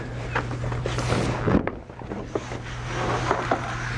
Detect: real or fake real